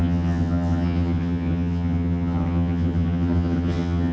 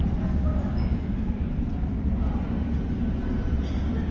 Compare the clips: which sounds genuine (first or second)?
second